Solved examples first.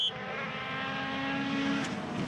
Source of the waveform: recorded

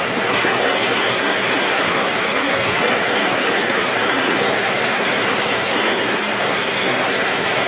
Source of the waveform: remade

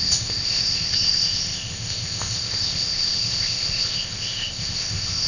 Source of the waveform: remade